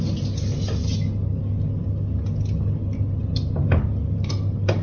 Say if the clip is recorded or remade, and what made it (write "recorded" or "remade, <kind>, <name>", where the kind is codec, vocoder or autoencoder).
recorded